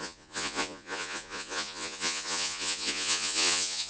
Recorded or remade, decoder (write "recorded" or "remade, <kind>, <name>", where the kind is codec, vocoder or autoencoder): remade, vocoder, Vocos